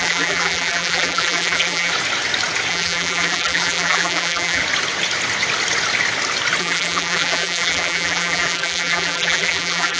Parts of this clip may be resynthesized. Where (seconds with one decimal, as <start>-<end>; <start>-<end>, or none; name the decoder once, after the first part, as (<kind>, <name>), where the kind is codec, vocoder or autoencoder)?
0.0-1.9 (vocoder, BigVGAN v2); 2.7-4.6; 6.6-10.0